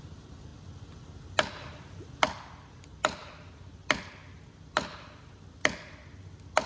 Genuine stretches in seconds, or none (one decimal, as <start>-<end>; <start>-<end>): 0.0-6.7